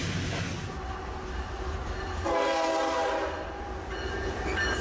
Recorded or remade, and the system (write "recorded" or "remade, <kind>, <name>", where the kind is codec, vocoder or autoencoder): recorded